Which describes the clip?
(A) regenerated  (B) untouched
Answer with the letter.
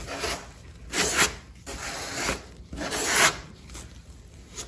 B